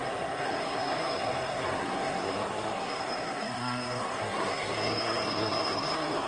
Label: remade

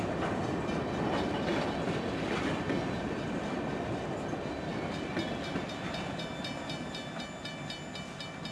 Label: recorded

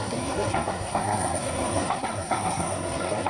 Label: remade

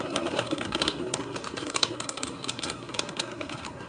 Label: remade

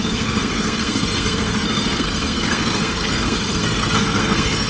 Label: remade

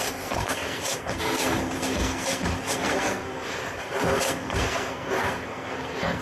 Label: remade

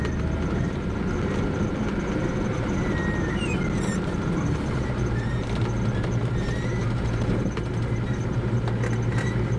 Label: recorded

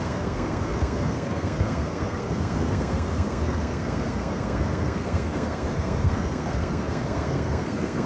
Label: remade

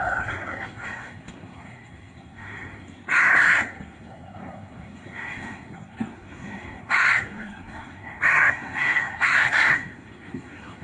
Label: remade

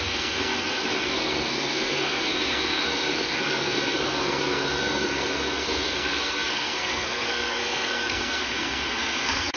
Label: remade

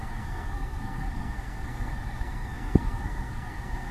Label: remade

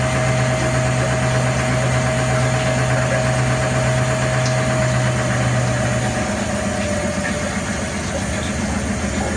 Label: recorded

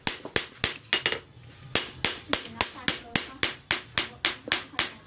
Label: recorded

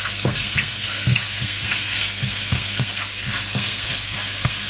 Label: remade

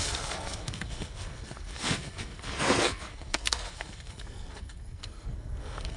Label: remade